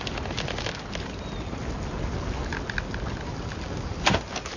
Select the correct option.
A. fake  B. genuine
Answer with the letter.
B